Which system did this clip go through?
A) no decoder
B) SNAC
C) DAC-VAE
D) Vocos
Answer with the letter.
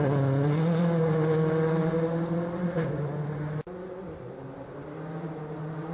A